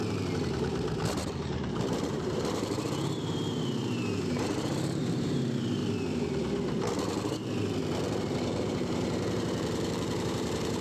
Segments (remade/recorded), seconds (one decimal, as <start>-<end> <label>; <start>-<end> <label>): 0.0-5.8 remade; 5.8-8.6 recorded; 8.6-10.8 remade